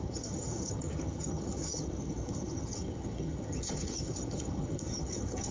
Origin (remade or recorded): remade